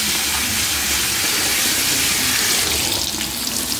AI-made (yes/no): no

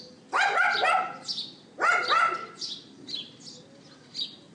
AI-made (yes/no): no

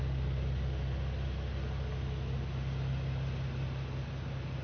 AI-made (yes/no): no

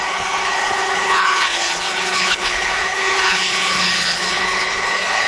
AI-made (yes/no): yes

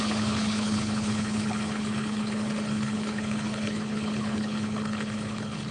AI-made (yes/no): yes